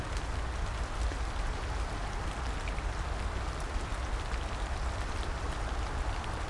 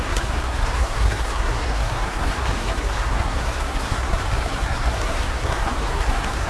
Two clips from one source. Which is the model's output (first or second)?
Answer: second